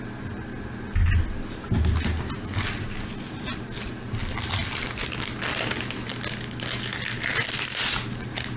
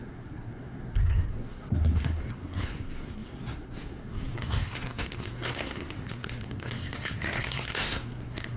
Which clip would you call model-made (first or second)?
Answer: second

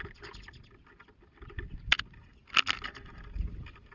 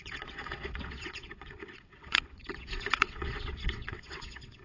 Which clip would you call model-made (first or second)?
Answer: second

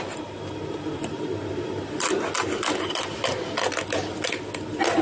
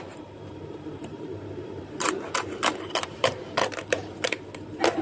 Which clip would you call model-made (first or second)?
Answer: second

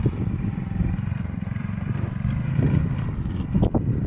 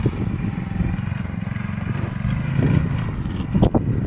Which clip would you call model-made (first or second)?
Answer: first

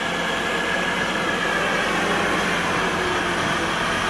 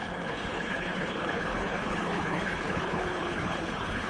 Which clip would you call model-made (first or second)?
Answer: second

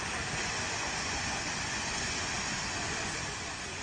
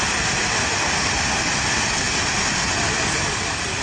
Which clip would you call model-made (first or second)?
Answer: first